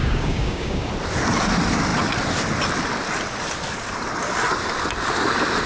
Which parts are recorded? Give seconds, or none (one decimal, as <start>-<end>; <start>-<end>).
0.9-5.7